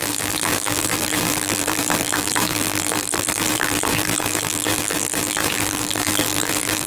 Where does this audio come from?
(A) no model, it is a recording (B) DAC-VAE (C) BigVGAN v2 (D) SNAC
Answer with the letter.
C